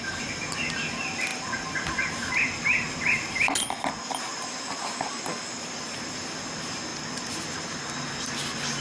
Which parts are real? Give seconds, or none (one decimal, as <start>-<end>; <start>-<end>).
0.0-6.9; 8.3-8.8